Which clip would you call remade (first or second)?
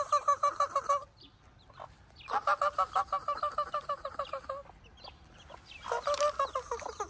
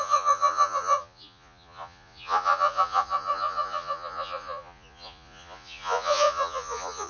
second